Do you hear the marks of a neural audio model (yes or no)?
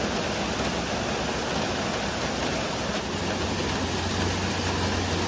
no